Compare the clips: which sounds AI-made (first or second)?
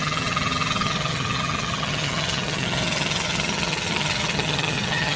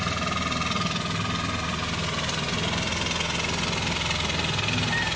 first